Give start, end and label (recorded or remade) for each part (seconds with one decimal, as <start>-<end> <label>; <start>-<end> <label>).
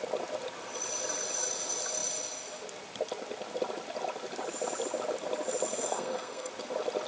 0.0-5.7 recorded; 5.7-6.5 remade; 6.5-7.1 recorded